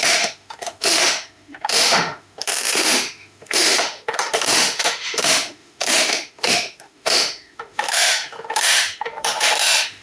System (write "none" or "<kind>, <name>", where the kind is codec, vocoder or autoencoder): autoencoder, DAC-VAE